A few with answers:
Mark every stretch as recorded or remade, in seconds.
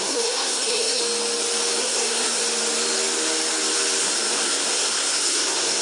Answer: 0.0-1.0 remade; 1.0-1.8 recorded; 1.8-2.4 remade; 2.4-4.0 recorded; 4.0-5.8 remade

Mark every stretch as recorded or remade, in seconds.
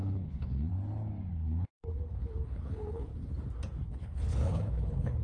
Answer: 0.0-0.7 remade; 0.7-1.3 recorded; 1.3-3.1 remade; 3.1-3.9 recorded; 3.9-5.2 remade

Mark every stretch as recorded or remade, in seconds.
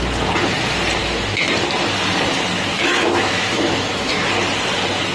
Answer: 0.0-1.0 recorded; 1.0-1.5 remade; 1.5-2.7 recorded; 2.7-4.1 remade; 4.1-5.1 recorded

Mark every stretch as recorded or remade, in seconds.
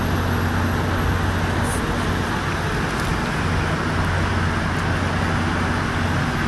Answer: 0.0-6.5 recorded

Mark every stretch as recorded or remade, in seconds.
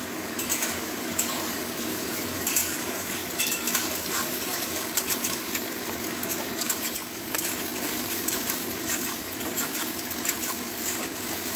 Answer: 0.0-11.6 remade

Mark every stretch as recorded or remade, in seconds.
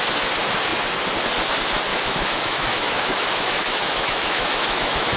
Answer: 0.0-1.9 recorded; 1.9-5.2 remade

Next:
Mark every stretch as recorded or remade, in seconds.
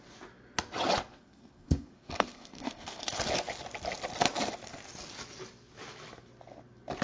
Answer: 0.0-1.1 recorded; 1.1-3.2 remade; 3.2-7.0 recorded